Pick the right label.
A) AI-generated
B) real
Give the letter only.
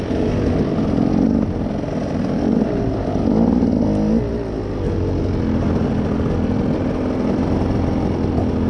B